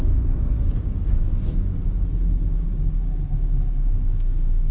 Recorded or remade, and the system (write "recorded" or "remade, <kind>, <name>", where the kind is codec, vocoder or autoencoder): remade, codec, DAC